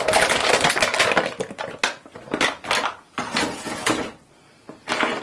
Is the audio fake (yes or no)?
no